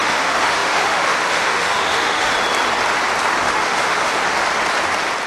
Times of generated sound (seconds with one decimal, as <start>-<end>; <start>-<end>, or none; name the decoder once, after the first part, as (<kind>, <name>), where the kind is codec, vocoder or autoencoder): 0.0-2.3 (autoencoder, DAC-VAE); 3.4-4.2